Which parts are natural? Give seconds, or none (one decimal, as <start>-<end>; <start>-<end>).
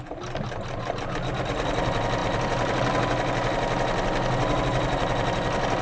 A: 0.0-5.8